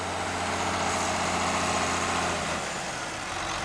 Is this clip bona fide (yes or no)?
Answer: yes